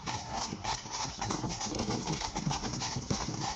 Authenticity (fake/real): fake